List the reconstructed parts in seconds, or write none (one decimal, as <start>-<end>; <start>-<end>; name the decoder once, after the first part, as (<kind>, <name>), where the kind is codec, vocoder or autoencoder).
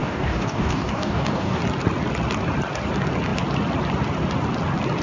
0.0-1.6 (codec, DAC)